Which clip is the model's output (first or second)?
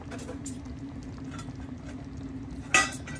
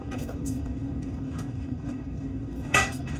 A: second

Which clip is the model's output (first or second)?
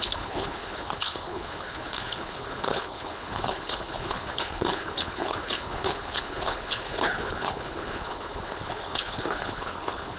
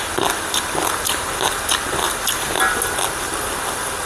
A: first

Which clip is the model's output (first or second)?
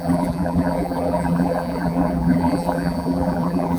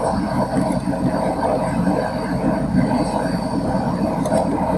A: first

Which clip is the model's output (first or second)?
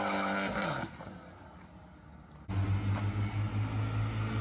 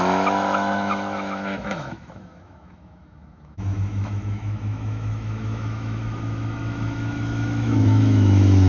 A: second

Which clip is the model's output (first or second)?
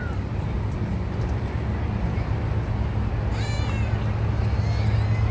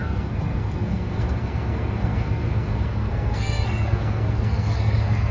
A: second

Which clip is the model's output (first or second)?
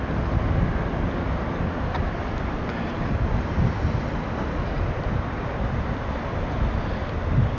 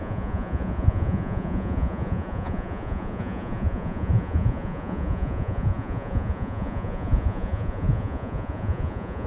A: second